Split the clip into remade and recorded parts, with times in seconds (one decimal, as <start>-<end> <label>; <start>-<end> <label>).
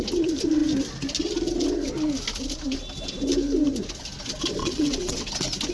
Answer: 0.0-4.6 recorded; 4.6-5.3 remade; 5.3-5.7 recorded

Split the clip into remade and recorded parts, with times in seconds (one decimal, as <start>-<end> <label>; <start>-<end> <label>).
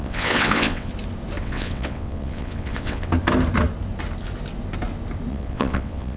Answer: 0.0-0.9 remade; 0.9-1.4 recorded; 1.4-3.1 remade; 3.1-5.3 recorded; 5.3-6.2 remade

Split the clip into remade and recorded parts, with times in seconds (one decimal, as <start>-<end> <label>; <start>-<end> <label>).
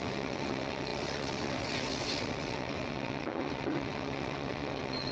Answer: 0.0-5.1 remade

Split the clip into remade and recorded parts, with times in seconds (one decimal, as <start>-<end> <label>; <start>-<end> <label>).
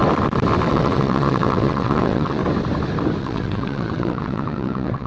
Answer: 0.0-0.7 recorded; 0.7-2.4 remade; 2.4-3.2 recorded; 3.2-5.1 remade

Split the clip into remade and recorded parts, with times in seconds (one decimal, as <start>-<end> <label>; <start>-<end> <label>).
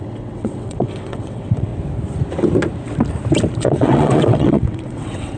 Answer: 0.0-1.7 remade; 1.7-3.6 recorded; 3.6-5.4 remade